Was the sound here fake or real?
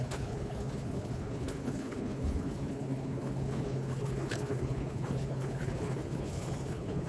fake